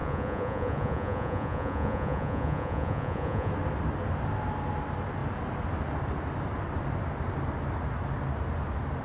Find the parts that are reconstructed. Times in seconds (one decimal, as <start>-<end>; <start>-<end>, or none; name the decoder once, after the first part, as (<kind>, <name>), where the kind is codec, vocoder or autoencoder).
0.0-3.5 (vocoder, Vocos)